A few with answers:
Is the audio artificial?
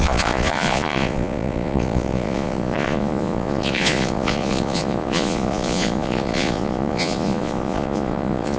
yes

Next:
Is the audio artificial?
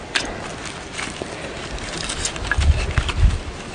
no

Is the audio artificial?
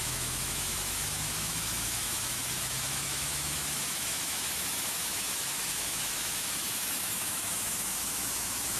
yes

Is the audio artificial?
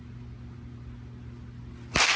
no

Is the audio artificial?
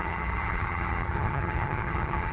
yes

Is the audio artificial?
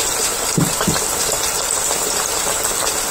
no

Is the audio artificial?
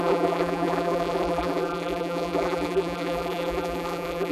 yes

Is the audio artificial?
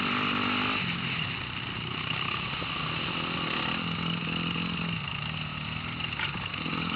no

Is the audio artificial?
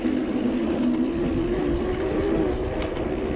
no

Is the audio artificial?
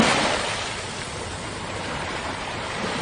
yes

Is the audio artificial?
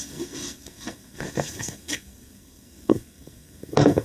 yes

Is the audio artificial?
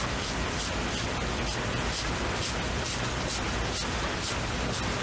no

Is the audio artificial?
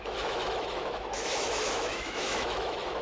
yes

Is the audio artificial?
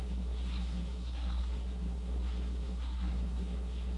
yes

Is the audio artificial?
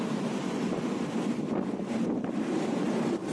no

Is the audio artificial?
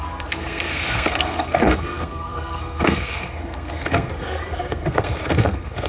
yes